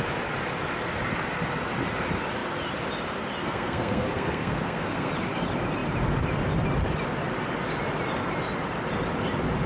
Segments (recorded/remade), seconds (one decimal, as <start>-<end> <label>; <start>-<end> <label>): 0.0-3.4 recorded; 3.4-5.1 remade; 5.1-9.7 recorded

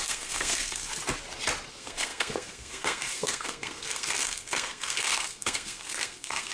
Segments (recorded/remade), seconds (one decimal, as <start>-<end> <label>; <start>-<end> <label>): 0.0-0.9 remade; 0.9-1.7 recorded; 1.7-6.5 remade